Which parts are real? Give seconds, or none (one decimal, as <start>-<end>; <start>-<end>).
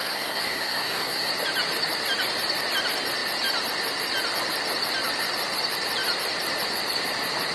1.3-7.5